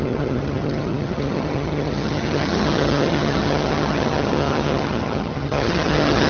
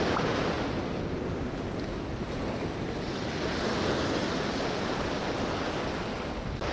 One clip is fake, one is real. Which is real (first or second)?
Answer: second